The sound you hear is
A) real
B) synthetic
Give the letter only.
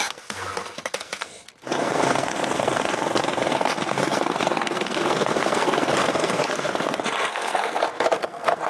B